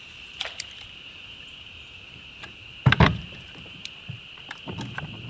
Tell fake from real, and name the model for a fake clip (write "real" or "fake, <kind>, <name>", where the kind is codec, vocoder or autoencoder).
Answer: fake, vocoder, BigVGAN v2